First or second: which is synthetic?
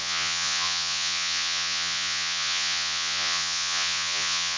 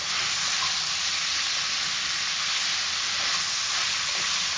first